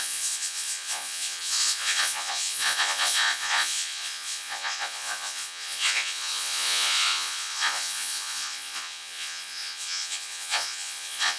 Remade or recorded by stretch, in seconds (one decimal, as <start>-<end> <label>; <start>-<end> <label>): 0.0-11.4 remade